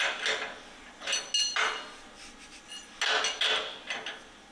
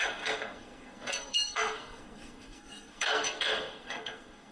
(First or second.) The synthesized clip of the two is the second